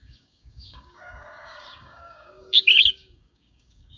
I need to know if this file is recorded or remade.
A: remade